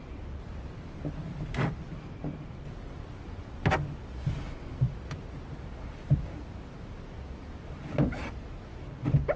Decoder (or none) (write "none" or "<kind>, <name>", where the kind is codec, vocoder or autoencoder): none